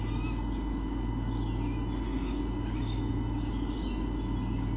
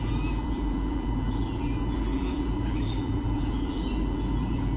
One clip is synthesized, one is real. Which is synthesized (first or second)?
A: second